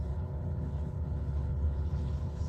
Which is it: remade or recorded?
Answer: remade